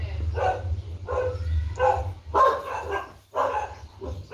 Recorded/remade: recorded